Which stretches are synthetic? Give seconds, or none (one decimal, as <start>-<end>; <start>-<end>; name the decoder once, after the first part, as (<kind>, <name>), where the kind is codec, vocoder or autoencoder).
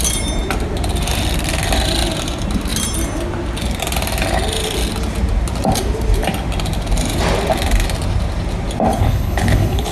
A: 8.9-9.9 (codec, HILCodec)